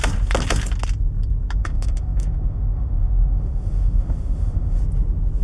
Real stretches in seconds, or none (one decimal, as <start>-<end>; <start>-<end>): 0.0-1.6; 4.8-5.4